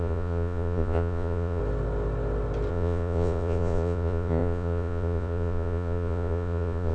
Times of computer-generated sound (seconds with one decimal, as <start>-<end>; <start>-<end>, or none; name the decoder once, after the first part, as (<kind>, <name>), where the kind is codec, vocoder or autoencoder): 0.0-1.6 (vocoder, Vocos); 2.7-6.9